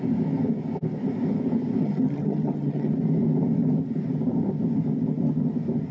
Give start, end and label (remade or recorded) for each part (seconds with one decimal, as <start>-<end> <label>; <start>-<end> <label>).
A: 0.0-1.8 recorded; 1.8-2.9 remade; 2.9-5.9 recorded